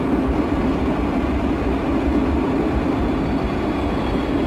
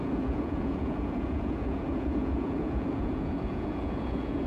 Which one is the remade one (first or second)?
second